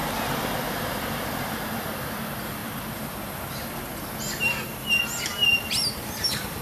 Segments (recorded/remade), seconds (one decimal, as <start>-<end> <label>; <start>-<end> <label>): 0.0-3.9 remade; 3.9-5.9 recorded; 5.9-6.6 remade